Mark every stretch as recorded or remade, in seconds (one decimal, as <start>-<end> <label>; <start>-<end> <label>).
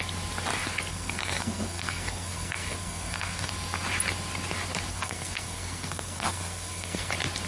0.0-0.9 recorded; 0.9-3.5 remade; 3.5-4.9 recorded; 4.9-7.1 remade; 7.1-7.5 recorded